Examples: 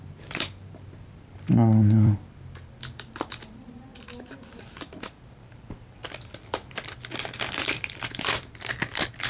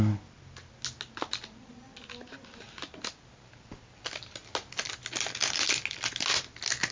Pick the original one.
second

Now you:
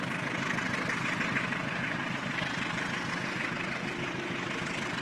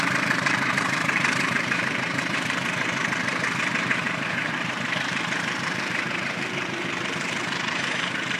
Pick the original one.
first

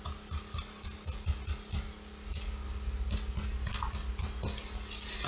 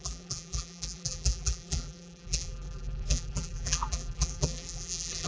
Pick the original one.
first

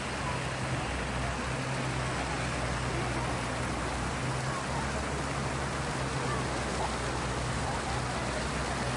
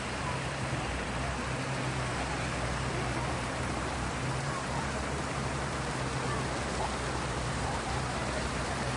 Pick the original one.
first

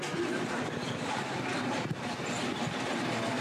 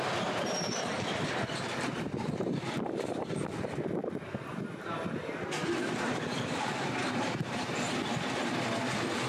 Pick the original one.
first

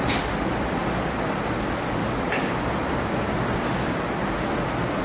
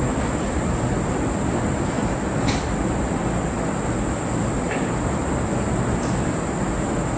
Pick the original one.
first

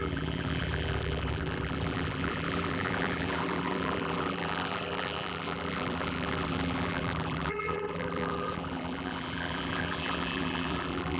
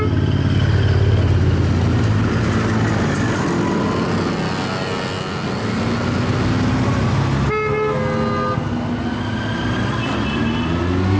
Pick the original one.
second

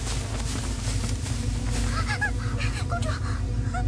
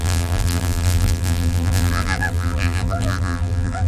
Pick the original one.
first